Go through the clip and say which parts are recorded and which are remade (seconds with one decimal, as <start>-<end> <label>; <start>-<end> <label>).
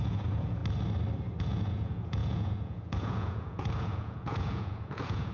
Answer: 0.0-0.6 remade; 0.6-1.4 recorded; 1.4-5.3 remade